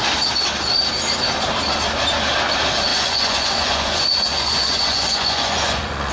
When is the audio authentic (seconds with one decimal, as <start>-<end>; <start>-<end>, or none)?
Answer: 0.0-2.9